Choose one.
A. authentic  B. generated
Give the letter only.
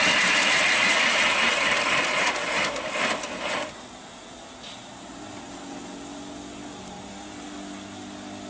A